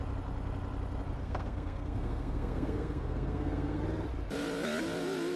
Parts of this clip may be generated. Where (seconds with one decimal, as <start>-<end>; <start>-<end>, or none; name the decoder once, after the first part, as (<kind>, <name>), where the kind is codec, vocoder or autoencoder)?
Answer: 1.2-3.8 (codec, SNAC)